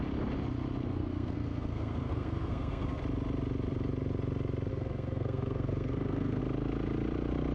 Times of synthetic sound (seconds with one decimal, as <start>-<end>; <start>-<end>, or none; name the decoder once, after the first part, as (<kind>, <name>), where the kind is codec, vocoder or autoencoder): 0.9-3.0 (codec, SNAC); 4.7-6.4